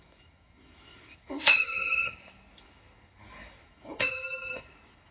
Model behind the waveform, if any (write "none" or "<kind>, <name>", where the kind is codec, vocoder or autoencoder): autoencoder, DAC-VAE